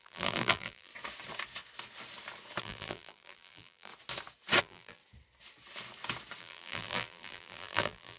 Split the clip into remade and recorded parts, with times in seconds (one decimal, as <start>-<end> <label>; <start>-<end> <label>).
0.0-0.9 remade; 0.9-2.6 recorded; 2.6-3.9 remade; 3.9-4.6 recorded; 4.6-5.0 remade; 5.0-6.4 recorded; 6.4-8.2 remade

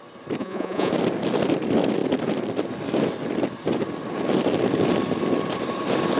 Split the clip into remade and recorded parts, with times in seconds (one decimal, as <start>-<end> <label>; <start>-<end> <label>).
0.0-0.4 recorded; 0.4-0.9 remade; 0.9-6.2 recorded

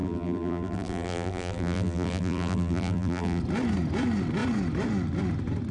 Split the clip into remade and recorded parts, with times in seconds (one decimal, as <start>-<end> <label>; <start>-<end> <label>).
0.0-3.4 remade; 3.4-5.7 recorded

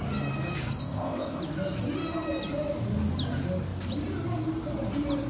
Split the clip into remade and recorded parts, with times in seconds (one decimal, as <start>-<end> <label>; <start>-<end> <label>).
0.0-0.8 recorded; 0.8-1.4 remade; 1.4-5.3 recorded